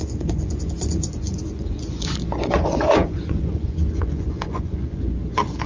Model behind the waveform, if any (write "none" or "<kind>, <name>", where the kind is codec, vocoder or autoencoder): vocoder, Vocos